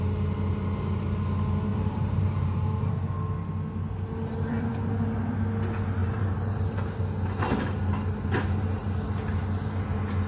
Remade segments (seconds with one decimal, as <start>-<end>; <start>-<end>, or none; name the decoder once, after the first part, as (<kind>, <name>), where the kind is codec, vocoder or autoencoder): 1.7-2.9 (vocoder, BigVGAN v2); 6.0-6.6